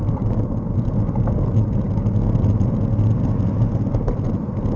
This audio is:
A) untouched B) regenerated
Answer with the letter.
A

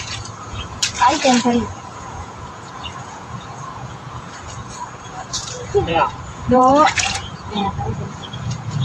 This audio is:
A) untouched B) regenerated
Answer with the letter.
B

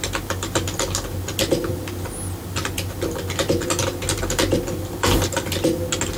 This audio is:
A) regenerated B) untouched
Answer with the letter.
B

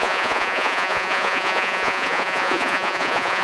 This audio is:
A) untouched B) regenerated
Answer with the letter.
B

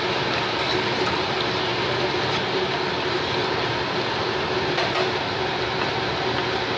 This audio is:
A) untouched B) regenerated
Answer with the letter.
A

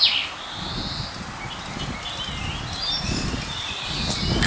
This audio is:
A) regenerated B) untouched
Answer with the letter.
B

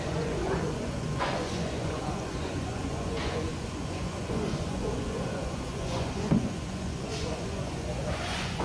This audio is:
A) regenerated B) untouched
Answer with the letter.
A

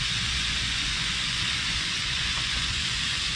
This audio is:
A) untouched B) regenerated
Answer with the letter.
B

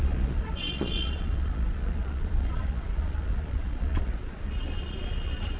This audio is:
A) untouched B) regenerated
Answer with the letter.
B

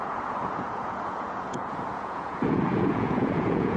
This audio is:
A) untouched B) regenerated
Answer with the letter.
B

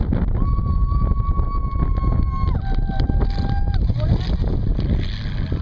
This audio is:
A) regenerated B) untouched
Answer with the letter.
B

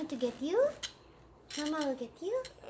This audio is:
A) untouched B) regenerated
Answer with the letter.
A